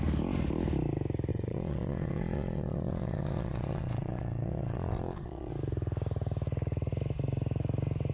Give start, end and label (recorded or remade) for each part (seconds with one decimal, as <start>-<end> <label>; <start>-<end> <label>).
0.0-1.3 recorded; 1.3-5.5 remade; 5.5-8.1 recorded